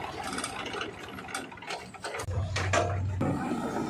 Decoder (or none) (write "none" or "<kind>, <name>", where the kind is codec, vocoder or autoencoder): none